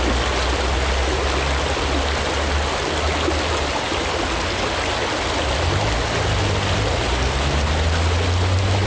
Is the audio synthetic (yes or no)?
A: no